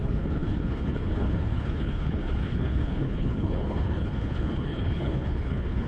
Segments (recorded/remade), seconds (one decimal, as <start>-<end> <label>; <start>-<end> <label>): 0.0-5.9 remade